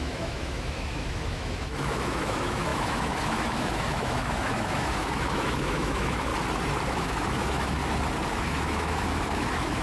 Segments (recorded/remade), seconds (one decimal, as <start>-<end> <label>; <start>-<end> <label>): 0.0-6.3 remade; 6.3-6.9 recorded; 6.9-7.8 remade; 7.8-8.4 recorded; 8.4-9.8 remade